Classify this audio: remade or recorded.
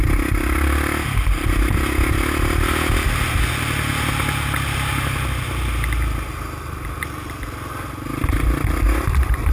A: recorded